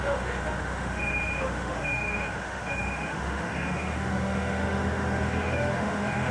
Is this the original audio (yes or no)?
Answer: no